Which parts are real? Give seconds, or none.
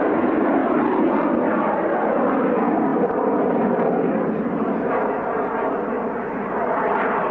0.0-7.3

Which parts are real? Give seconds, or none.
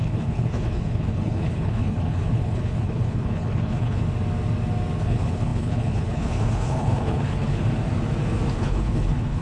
4.0-5.0; 7.6-8.5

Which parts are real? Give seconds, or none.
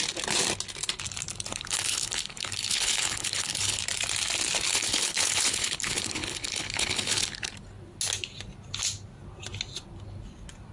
0.0-1.5; 3.8-4.7; 7.5-10.7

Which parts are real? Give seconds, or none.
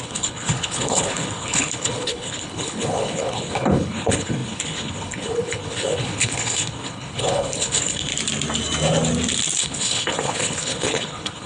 8.1-9.6